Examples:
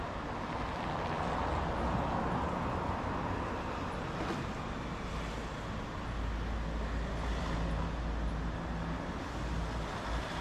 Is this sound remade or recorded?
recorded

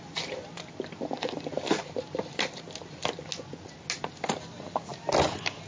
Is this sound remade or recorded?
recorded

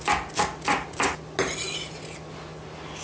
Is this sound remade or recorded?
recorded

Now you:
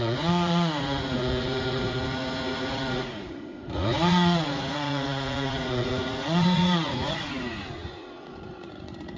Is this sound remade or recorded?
remade